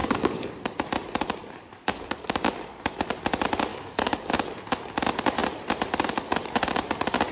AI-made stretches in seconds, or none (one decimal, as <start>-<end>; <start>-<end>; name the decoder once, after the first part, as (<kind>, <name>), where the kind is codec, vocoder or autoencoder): 0.0-0.5 (codec, DAC); 1.4-3.1; 3.7-4.3